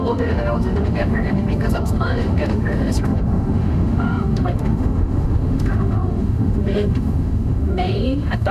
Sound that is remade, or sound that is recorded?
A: remade